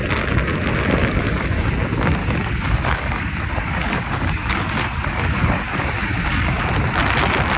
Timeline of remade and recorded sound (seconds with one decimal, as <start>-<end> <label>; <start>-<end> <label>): 0.0-1.0 recorded; 1.0-1.7 remade; 1.7-2.2 recorded; 2.2-6.6 remade; 6.6-7.6 recorded